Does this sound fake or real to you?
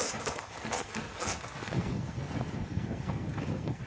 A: fake